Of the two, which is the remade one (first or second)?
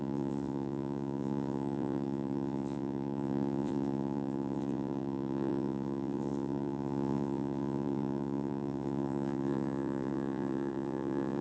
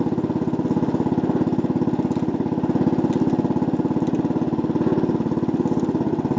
first